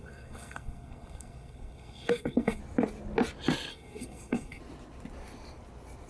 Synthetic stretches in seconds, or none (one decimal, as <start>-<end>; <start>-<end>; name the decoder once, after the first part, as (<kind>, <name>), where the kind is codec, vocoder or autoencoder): 0.0-2.6 (codec, SNAC); 3.7-4.6

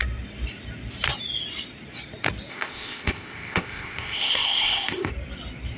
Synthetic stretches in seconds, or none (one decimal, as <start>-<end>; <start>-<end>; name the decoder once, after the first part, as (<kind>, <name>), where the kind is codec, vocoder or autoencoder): 2.5-5.1 (codec, ZipCodec)

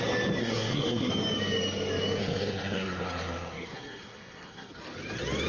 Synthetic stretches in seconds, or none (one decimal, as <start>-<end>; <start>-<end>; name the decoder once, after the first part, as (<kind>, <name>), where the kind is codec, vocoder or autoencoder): 0.4-1.1 (codec, SNAC); 2.2-4.7

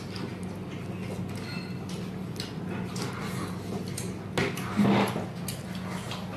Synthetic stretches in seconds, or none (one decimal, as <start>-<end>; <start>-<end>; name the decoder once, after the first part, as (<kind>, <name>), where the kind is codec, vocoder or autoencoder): none

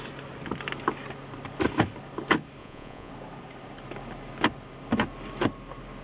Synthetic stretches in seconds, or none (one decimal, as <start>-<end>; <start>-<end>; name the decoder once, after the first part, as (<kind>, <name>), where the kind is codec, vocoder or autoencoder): 2.6-3.1 (vocoder, Vocos)